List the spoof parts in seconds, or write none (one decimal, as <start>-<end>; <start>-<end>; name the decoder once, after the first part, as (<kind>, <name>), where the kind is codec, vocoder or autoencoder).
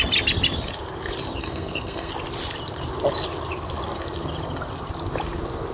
1.4-2.1 (codec, SNAC)